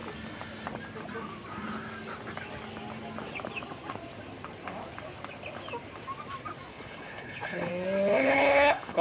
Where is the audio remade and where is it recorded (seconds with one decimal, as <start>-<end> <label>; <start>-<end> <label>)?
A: 0.0-6.7 recorded; 6.7-7.7 remade; 7.7-8.2 recorded; 8.2-9.0 remade